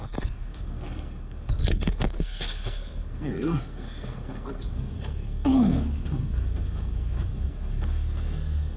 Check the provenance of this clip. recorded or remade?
remade